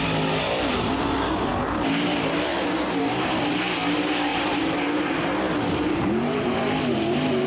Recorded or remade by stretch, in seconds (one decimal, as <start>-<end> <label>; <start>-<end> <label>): 0.0-7.5 remade